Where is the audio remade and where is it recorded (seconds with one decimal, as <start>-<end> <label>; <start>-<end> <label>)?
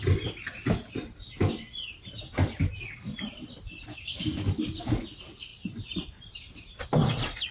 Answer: 0.0-2.5 recorded; 2.5-3.6 remade; 3.6-5.5 recorded; 5.5-6.8 remade; 6.8-7.5 recorded